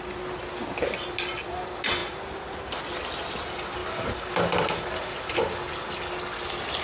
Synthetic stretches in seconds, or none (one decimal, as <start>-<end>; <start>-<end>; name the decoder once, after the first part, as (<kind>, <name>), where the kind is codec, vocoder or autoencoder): none